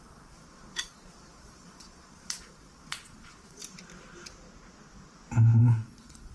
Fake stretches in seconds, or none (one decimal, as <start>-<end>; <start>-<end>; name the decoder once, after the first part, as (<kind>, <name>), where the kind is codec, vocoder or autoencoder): 0.0-3.6 (vocoder, Vocos); 5.6-6.3

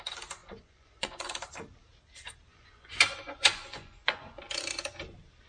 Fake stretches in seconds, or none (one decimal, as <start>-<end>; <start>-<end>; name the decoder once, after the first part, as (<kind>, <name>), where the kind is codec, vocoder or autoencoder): 0.4-1.4 (vocoder, Vocos); 2.5-4.4

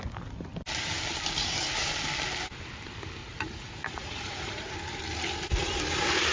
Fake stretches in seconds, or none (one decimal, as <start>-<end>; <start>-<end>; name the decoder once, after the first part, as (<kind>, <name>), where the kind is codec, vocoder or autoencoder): 3.2-4.7 (vocoder, Vocos)

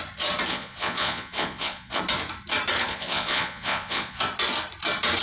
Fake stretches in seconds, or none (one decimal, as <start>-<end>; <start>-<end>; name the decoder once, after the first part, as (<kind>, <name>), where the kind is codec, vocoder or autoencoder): 0.5-2.0 (vocoder, Vocos); 2.9-4.2

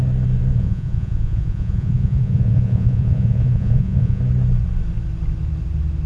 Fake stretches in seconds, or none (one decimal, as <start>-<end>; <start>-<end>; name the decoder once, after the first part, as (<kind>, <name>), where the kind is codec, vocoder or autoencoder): 0.5-4.2 (vocoder, Vocos)

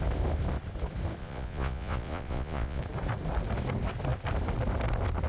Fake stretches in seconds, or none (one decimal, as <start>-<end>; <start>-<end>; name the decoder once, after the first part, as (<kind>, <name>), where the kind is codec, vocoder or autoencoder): 1.2-2.8 (vocoder, Vocos)